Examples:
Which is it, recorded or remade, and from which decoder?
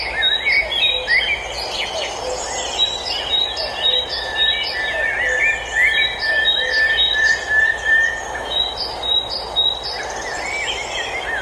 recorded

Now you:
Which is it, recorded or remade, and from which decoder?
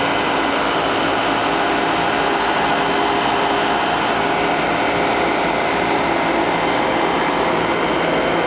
recorded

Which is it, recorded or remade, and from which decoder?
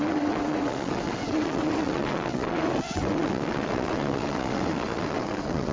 remade, vocoder, WaveNeXt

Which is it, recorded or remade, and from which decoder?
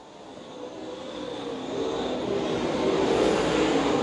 recorded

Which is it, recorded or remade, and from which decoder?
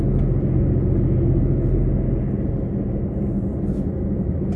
recorded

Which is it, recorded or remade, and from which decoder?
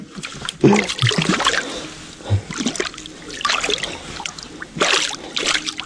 recorded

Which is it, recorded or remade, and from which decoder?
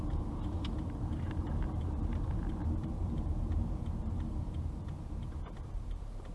remade, vocoder, BigVGAN v2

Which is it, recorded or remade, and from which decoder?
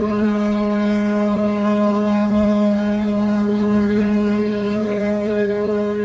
remade, codec, SNAC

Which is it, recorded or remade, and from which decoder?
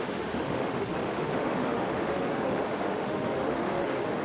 remade, autoencoder, DAC-VAE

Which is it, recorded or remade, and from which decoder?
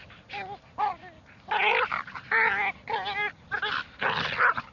recorded